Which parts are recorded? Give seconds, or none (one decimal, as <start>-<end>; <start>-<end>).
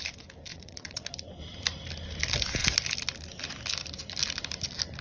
0.0-0.5; 1.1-5.0